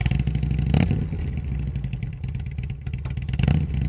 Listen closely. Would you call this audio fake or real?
real